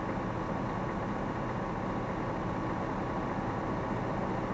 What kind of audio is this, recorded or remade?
recorded